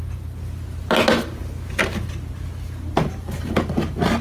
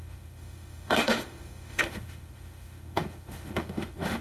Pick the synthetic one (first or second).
second